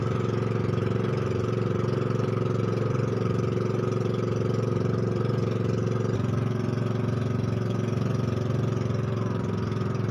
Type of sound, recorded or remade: remade